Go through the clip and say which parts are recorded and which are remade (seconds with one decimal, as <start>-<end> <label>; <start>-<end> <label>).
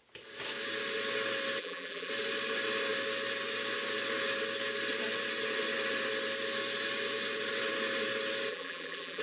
0.0-1.6 recorded; 1.6-2.1 remade; 2.1-8.5 recorded; 8.5-9.2 remade